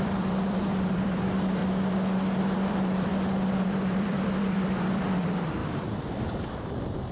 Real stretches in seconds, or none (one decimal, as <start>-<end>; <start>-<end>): 1.6-2.4; 3.1-3.6; 5.6-6.1